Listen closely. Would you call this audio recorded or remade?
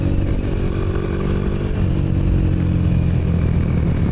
recorded